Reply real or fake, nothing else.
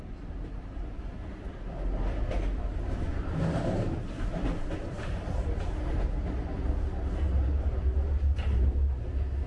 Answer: real